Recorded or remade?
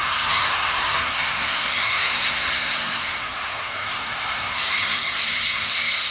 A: remade